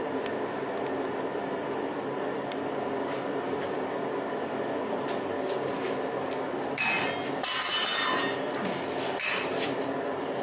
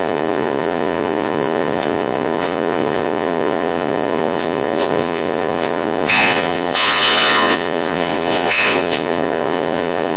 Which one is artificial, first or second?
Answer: second